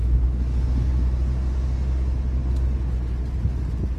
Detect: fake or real real